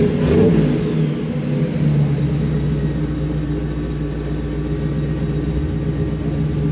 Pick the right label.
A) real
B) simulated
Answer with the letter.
A